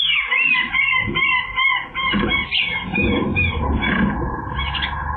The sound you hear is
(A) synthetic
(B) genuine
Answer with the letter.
B